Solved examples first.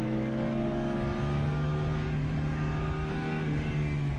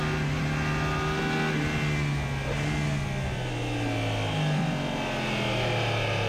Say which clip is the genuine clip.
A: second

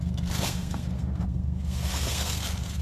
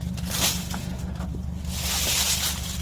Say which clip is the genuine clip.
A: second